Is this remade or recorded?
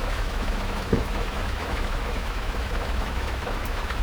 remade